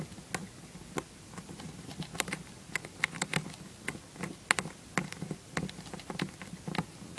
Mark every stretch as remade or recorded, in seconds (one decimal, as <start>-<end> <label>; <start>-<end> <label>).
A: 0.0-7.2 recorded